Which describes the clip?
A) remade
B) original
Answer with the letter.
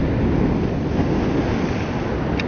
B